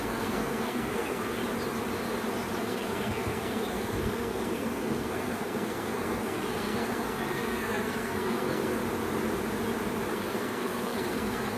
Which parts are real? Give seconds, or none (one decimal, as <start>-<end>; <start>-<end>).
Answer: 1.4-2.6; 8.8-10.1